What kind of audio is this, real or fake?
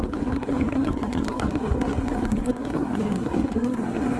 fake